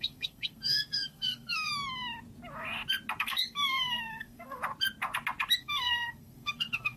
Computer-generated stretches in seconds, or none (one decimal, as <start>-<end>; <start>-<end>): 0.0-1.7; 3.2-4.6; 5.6-7.0